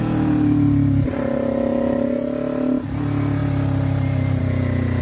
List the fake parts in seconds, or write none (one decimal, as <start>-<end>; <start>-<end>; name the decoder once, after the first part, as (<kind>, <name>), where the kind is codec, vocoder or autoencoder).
none